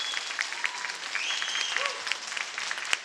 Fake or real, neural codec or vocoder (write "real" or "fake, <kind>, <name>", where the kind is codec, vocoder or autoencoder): real